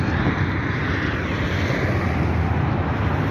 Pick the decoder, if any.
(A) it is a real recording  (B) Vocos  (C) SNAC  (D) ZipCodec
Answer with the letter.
A